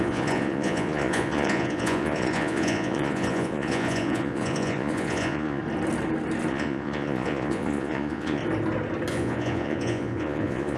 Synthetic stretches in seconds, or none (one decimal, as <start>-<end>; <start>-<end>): 0.0-5.6; 6.5-8.4; 9.1-10.8